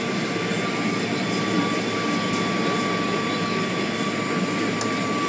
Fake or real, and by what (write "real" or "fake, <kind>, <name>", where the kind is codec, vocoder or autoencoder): real